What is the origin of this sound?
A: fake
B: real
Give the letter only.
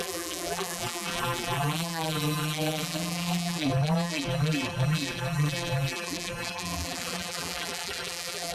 A